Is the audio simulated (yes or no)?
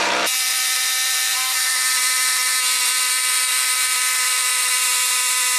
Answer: yes